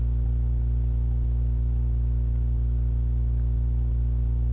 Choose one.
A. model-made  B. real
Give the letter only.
B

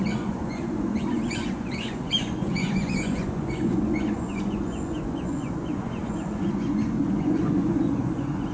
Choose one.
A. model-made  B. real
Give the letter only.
A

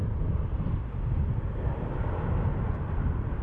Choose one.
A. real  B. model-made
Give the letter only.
A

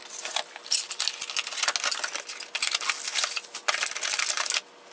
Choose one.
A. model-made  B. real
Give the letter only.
B